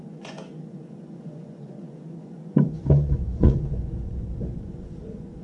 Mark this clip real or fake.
fake